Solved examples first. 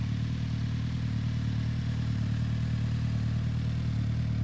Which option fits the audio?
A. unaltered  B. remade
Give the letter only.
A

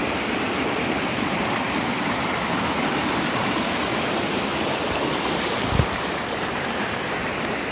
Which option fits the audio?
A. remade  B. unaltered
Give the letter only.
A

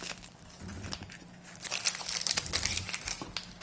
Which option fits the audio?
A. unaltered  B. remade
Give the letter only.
A